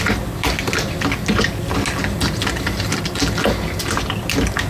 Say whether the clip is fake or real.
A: real